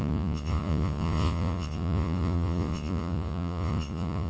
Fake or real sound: fake